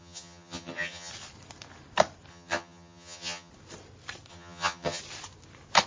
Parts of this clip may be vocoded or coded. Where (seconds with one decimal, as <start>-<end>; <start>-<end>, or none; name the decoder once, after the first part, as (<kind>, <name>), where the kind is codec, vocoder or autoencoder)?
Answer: 0.0-1.1 (vocoder, HiFi-GAN); 2.3-3.5; 4.3-5.0